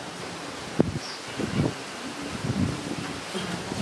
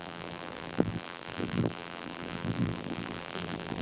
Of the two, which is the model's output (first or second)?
second